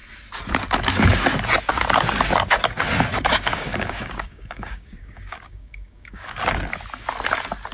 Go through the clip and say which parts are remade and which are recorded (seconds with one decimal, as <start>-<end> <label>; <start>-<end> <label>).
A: 0.0-3.1 recorded; 3.1-6.4 remade; 6.4-7.7 recorded